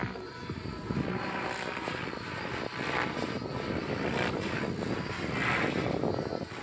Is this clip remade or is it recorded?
recorded